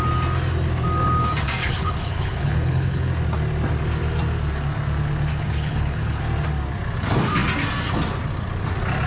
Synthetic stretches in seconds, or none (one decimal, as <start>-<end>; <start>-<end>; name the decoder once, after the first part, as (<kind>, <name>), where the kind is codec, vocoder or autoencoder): 1.6-3.1 (codec, HILCodec); 5.3-6.2